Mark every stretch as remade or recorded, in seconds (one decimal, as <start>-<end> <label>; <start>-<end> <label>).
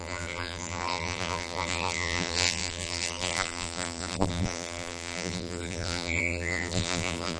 0.0-7.4 remade